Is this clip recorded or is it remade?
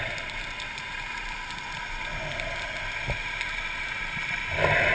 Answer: recorded